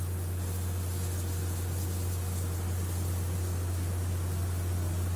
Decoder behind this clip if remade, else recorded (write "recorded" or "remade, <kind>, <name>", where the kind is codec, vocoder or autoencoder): recorded